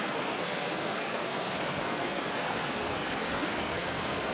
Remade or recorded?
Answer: remade